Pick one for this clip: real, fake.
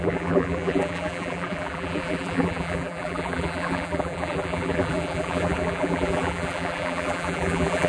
fake